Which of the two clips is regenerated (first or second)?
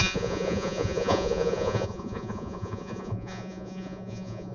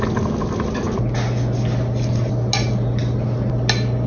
first